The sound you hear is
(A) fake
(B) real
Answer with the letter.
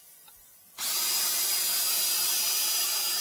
B